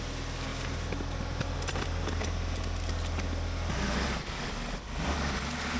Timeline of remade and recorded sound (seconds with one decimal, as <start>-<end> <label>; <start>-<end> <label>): 0.0-5.8 recorded